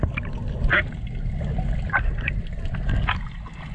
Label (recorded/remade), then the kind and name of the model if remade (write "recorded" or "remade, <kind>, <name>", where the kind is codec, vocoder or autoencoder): recorded